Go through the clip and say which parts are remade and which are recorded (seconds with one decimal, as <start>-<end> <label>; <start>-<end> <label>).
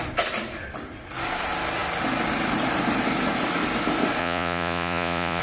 0.0-4.2 recorded; 4.2-5.4 remade